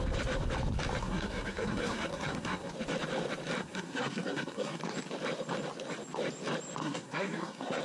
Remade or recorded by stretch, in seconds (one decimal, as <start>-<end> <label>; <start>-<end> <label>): 0.0-1.0 recorded; 1.0-2.7 remade; 2.7-3.6 recorded; 3.6-4.8 remade; 4.8-6.8 recorded; 6.8-7.8 remade